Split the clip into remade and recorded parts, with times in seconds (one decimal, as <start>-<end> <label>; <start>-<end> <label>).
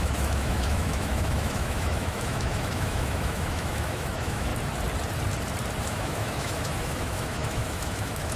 0.0-4.5 remade; 4.5-5.8 recorded; 5.8-8.4 remade